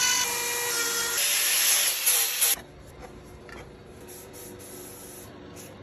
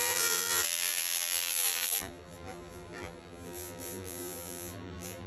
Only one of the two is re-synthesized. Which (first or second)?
second